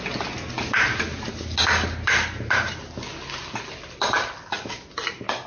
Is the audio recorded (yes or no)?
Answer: yes